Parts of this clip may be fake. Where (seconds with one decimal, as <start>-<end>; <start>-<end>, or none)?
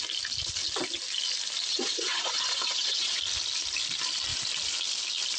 1.7-3.2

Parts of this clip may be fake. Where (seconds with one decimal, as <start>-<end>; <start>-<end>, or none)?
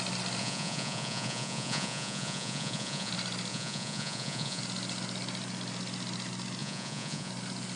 0.4-3.1; 3.5-4.6; 6.6-7.3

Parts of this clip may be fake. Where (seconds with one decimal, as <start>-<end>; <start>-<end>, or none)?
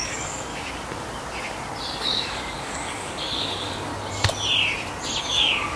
0.0-0.5; 2.0-3.9; 5.2-5.8